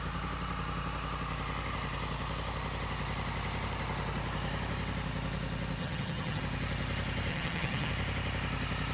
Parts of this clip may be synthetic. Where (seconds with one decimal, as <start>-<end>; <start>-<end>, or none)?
5.8-6.4; 7.3-7.9